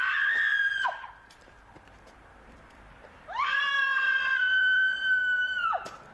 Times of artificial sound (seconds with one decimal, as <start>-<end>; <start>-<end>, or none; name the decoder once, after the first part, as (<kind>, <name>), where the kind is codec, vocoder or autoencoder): 0.0-5.2 (vocoder, BigVGAN v2)